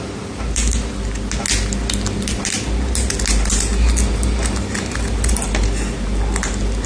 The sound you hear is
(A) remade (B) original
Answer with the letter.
B